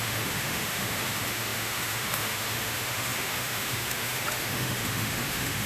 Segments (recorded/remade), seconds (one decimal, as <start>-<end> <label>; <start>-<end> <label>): 0.0-5.7 remade